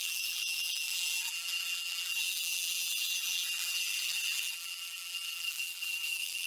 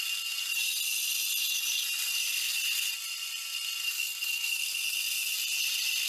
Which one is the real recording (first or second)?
second